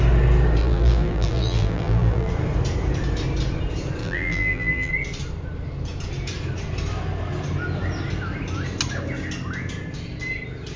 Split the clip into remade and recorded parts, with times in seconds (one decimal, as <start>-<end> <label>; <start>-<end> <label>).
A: 0.0-0.6 recorded; 0.6-2.3 remade; 2.3-4.0 recorded; 4.0-4.9 remade; 4.9-10.8 recorded

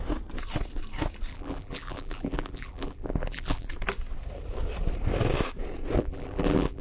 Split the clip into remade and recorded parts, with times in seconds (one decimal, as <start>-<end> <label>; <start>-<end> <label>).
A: 0.0-1.3 recorded; 1.3-3.7 remade; 3.7-6.0 recorded; 6.0-6.8 remade

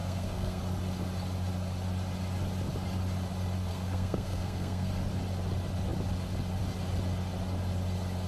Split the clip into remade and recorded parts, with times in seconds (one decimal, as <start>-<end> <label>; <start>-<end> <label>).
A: 0.0-0.6 remade; 0.6-3.7 recorded; 3.7-4.9 remade; 4.9-8.3 recorded

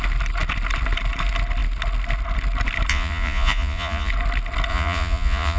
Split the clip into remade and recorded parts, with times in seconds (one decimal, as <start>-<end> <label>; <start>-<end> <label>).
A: 0.0-2.9 recorded; 2.9-4.1 remade; 4.1-4.7 recorded; 4.7-5.6 remade

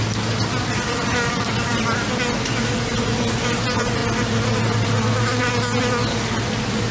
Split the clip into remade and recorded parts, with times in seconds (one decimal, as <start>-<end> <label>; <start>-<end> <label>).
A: 0.0-6.9 recorded

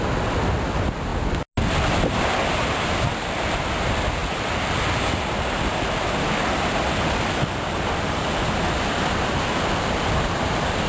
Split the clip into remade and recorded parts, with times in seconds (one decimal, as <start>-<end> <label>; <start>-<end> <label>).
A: 0.0-10.9 recorded

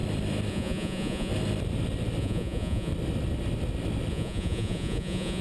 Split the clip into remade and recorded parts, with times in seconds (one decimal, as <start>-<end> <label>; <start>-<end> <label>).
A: 0.0-0.5 recorded; 0.5-1.3 remade; 1.3-2.2 recorded; 2.2-2.9 remade; 2.9-4.1 recorded; 4.1-5.4 remade